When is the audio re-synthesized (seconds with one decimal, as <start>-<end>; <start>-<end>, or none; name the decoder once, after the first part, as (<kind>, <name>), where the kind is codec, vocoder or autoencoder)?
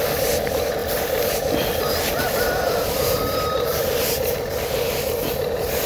0.8-4.3 (vocoder, BigVGAN v2)